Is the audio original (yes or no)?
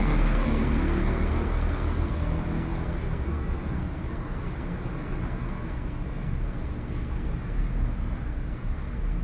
no